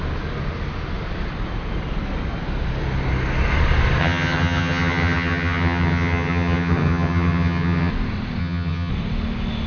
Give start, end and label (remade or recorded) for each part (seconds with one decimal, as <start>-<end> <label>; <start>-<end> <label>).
0.0-4.0 recorded; 4.0-7.9 remade; 7.9-8.4 recorded; 8.4-8.9 remade; 8.9-9.7 recorded